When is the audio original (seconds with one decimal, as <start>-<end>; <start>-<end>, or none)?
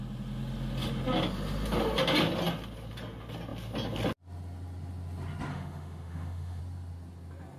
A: 0.0-5.5; 6.6-7.6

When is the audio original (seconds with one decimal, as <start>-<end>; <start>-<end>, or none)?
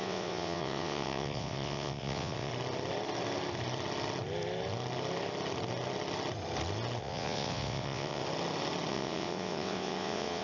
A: 2.5-7.0; 8.2-8.9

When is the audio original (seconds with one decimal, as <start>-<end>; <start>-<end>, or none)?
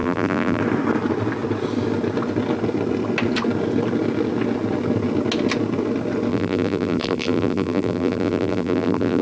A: 0.6-6.3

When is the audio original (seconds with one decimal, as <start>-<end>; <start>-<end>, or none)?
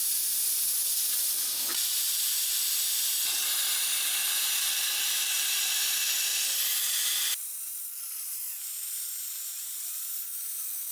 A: 0.0-1.7; 6.3-6.9; 9.3-10.9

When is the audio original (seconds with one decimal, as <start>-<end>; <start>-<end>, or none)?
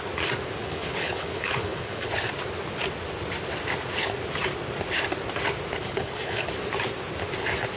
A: 0.0-0.6; 2.1-5.8; 6.5-7.8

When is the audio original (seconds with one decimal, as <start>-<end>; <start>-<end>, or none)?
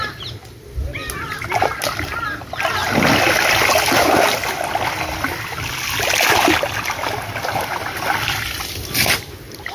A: 0.0-9.7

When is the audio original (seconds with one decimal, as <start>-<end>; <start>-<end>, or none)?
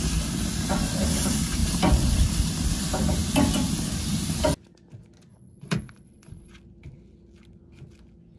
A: 0.0-5.3; 6.5-8.4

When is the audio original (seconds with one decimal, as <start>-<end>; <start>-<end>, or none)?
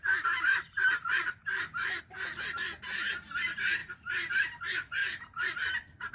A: 0.0-0.5; 2.0-3.8; 4.6-5.0